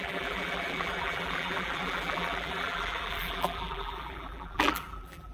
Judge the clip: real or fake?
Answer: fake